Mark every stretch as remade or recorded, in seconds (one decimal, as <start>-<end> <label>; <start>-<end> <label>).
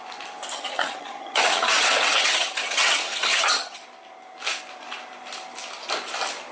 0.0-0.5 recorded; 0.5-3.8 remade; 3.8-6.5 recorded